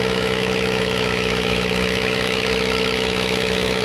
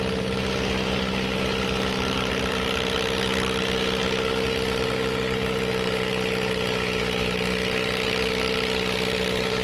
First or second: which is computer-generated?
first